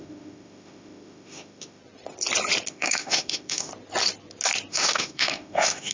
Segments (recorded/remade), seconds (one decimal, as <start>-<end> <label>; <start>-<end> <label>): 0.0-1.8 remade; 1.8-2.7 recorded; 2.7-3.7 remade; 3.7-4.7 recorded; 4.7-5.9 remade